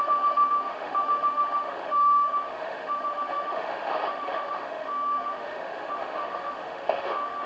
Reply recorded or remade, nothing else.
remade